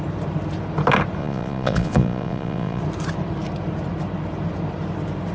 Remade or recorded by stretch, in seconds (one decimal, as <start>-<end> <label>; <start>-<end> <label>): 0.0-1.2 recorded; 1.2-2.8 remade; 2.8-5.3 recorded